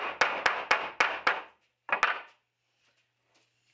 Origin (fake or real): real